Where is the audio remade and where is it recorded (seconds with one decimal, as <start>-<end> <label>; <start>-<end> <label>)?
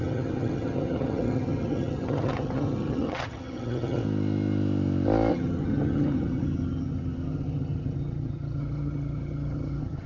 0.0-4.0 remade; 4.0-5.3 recorded; 5.3-10.1 remade